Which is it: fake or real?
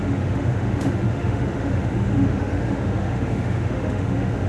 fake